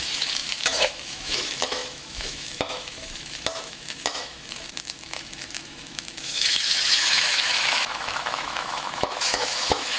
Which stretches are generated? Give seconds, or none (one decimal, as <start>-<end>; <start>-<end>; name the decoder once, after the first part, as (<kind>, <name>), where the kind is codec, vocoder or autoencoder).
0.0-10.0 (autoencoder, DAC-VAE)